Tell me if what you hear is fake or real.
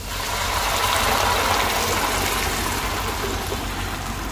real